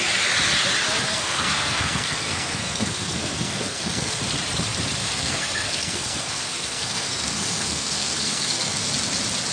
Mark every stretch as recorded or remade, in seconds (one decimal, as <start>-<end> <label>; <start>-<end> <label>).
0.0-1.1 recorded; 1.1-4.2 remade; 4.2-5.0 recorded; 5.0-8.9 remade; 8.9-9.5 recorded